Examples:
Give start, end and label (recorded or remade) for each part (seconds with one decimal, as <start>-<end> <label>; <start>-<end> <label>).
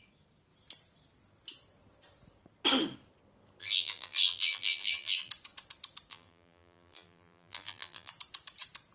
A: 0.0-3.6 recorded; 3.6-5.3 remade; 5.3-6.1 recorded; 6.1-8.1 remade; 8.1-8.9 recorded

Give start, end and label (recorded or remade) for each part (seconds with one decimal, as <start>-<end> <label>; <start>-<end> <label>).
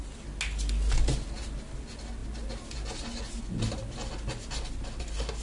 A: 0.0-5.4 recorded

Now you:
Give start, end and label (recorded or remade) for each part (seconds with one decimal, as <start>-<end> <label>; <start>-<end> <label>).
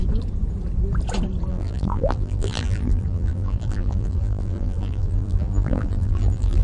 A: 0.0-1.5 recorded; 1.5-6.6 remade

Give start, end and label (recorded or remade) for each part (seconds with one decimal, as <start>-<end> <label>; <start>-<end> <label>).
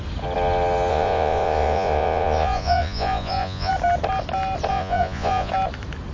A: 0.0-0.9 recorded; 0.9-3.7 remade; 3.7-4.7 recorded; 4.7-5.5 remade; 5.5-6.1 recorded